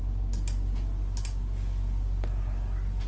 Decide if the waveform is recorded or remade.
recorded